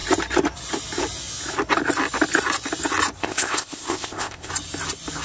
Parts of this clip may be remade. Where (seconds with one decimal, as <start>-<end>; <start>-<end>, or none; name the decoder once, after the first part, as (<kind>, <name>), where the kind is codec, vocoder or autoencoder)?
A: 3.2-4.5 (codec, ZipCodec)